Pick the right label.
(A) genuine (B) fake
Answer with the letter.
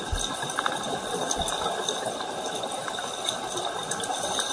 A